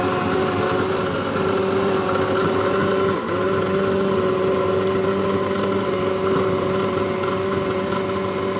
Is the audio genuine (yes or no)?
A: yes